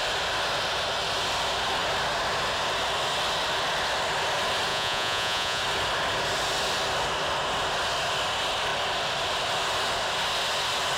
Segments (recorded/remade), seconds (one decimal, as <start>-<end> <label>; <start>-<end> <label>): 0.0-4.7 recorded; 4.7-5.6 remade; 5.6-11.0 recorded